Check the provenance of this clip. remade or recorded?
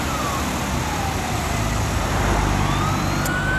recorded